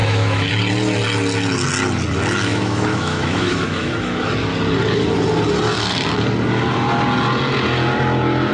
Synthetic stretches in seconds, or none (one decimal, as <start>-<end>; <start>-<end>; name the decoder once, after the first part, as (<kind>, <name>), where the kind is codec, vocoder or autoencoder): 0.0-0.5 (autoencoder, DAC-VAE); 2.5-4.3